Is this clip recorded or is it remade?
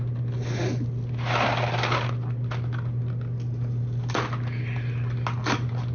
recorded